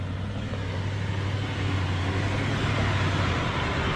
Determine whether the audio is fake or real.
real